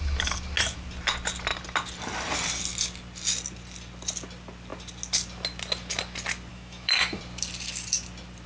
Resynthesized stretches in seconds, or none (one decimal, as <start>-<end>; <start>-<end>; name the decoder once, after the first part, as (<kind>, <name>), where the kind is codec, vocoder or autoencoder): 6.5-7.2 (autoencoder, DAC-VAE)